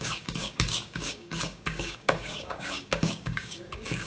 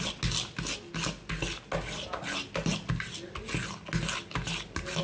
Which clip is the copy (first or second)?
first